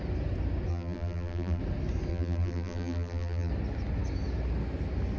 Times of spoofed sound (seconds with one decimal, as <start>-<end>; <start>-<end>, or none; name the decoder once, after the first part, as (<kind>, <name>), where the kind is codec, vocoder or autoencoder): 0.7-1.6 (vocoder, BigVGAN v2); 2.1-3.5